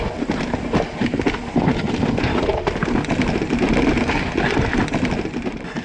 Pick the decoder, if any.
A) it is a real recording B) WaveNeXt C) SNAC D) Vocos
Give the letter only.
A